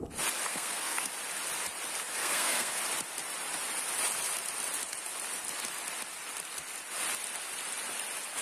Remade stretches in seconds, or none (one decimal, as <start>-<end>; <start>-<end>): 0.5-1.1; 2.2-2.8